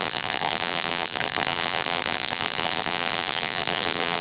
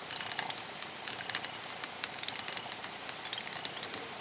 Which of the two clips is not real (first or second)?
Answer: first